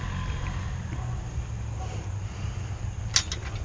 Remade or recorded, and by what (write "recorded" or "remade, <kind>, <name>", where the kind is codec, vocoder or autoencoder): recorded